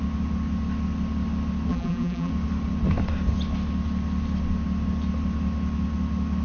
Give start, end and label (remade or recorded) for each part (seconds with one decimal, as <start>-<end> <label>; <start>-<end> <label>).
0.0-1.7 recorded; 1.7-2.3 remade; 2.3-6.4 recorded

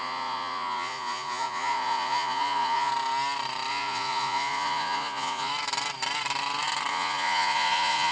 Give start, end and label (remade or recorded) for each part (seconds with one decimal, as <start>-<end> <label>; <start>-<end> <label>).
0.0-2.9 remade; 2.9-3.7 recorded; 3.7-5.5 remade; 5.5-6.9 recorded; 6.9-8.1 remade

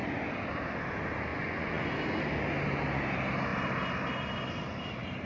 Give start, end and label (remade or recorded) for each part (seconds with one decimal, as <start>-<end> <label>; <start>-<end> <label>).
0.0-1.3 recorded; 1.3-1.9 remade; 1.9-5.3 recorded

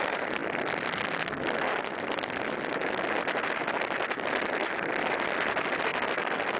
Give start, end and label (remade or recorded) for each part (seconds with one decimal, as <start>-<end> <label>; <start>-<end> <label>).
0.0-0.4 remade; 0.4-1.7 recorded; 1.7-2.8 remade; 2.8-3.6 recorded; 3.6-6.6 remade

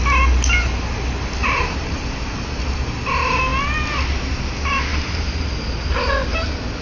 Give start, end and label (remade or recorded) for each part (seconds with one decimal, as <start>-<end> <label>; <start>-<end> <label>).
0.0-1.4 recorded; 1.4-2.6 remade; 2.6-4.9 recorded; 4.9-5.5 remade; 5.5-6.8 recorded

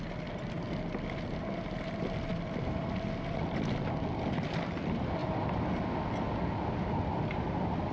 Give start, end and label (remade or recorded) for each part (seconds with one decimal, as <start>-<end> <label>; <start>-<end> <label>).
0.0-7.9 recorded